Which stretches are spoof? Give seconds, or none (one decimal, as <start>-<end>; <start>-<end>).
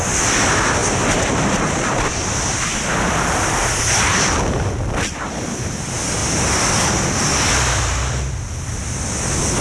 none